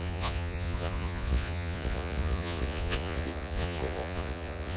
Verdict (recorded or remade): remade